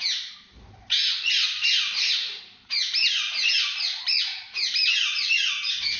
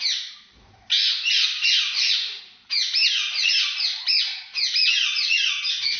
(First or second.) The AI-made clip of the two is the first